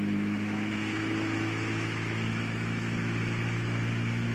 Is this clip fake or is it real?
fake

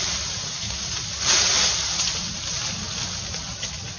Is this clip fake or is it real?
real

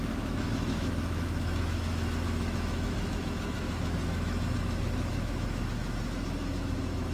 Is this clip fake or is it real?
fake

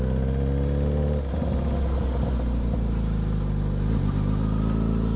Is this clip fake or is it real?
real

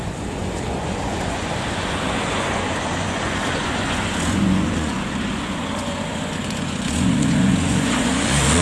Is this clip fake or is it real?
fake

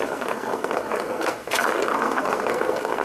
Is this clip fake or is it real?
fake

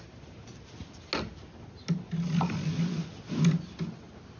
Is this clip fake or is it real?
real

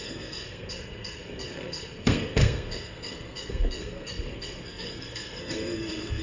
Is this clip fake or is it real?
fake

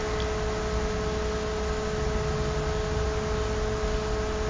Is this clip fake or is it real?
real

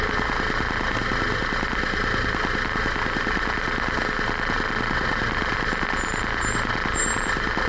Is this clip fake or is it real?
real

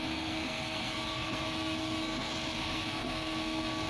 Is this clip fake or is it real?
fake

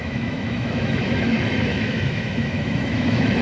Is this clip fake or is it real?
fake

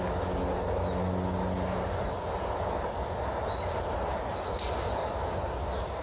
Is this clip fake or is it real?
real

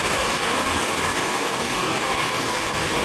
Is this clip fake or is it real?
fake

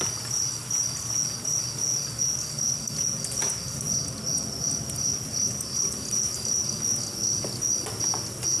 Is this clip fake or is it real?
real